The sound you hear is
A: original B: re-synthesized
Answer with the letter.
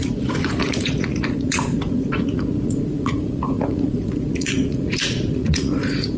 B